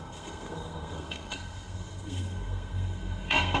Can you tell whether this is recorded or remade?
remade